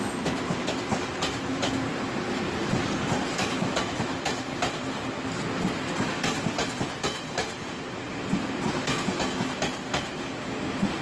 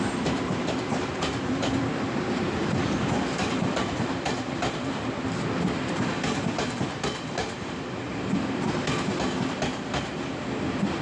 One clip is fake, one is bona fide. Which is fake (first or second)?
second